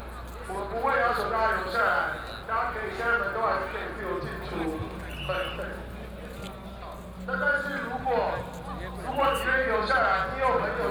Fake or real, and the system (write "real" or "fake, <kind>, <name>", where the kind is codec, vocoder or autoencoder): real